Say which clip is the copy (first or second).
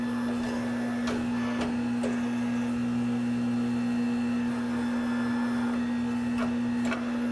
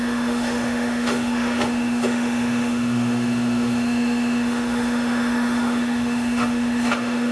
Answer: second